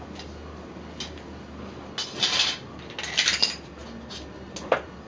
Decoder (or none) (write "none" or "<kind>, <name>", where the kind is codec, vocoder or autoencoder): none